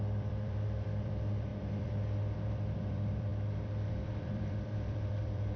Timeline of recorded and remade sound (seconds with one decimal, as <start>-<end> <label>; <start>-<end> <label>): 0.0-3.3 remade; 3.3-3.9 recorded; 3.9-5.6 remade